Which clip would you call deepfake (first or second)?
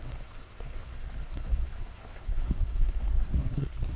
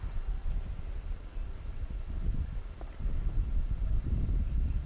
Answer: first